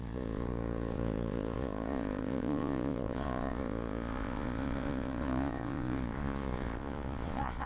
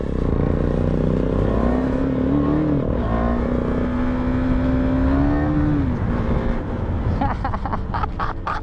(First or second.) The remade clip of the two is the first